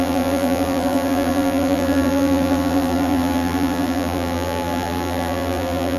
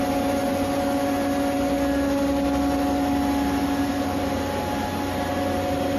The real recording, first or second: second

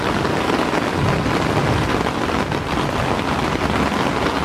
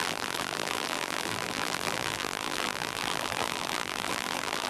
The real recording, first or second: first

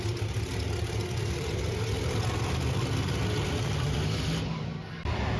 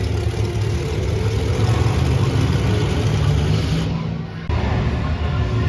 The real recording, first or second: second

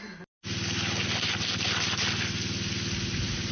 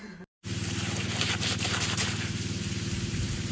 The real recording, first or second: first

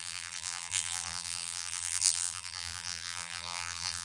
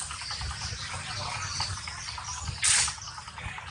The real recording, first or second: second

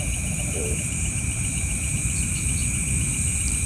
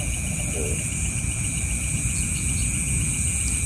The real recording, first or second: second